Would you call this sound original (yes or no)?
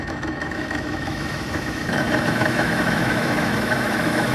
no